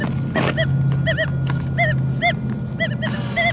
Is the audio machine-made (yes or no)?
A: no